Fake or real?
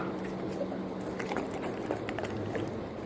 real